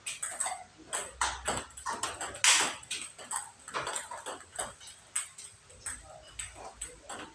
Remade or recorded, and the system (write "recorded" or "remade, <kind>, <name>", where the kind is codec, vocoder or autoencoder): recorded